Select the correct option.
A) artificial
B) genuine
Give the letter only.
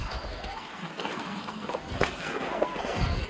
A